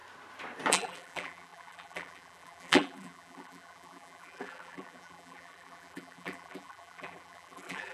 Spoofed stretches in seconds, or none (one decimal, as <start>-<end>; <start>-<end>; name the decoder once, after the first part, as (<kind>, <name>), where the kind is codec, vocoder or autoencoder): 0.7-7.9 (vocoder, BigVGAN v2)